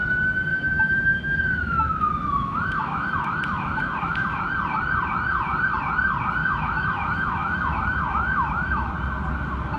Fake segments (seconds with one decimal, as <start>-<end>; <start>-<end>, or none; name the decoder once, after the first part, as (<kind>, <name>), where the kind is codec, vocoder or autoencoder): 0.5-4.4 (autoencoder, DAC-VAE); 6.4-8.9